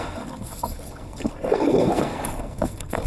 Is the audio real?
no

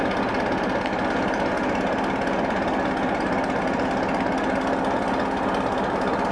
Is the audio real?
yes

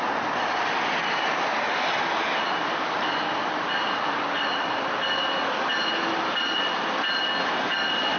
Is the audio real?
yes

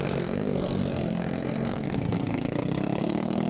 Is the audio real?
no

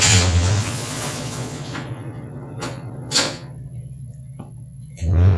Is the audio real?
no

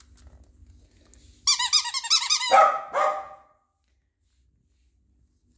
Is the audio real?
yes